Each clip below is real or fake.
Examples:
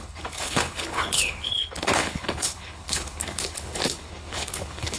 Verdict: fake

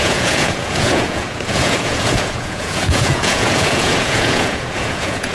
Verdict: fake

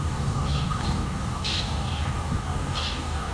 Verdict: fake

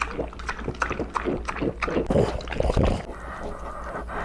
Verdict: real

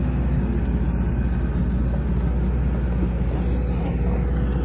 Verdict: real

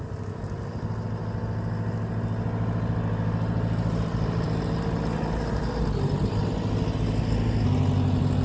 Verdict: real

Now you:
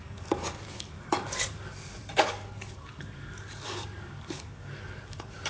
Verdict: fake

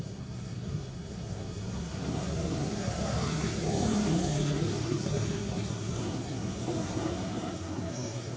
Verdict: fake